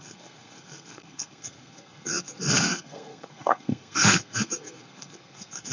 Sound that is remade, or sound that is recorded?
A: remade